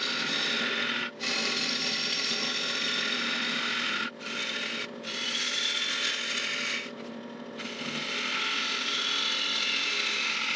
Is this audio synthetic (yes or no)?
no